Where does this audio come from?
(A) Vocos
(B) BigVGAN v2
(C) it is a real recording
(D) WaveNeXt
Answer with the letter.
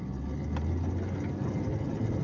C